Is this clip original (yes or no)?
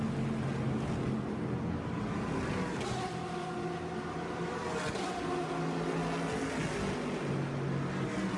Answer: yes